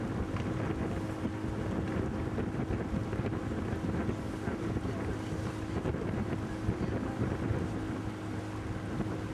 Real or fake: real